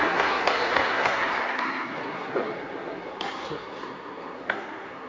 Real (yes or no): no